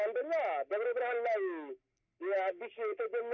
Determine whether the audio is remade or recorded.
recorded